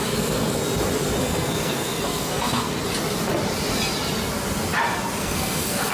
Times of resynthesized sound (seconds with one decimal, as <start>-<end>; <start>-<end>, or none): 0.0-0.6; 1.2-2.7; 5.2-5.9